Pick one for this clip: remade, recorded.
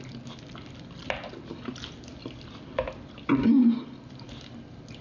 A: recorded